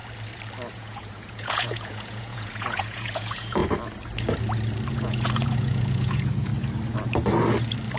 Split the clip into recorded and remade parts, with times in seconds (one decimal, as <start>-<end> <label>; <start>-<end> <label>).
0.0-0.7 recorded; 0.7-3.6 remade; 3.6-4.9 recorded; 4.9-6.5 remade; 6.5-8.0 recorded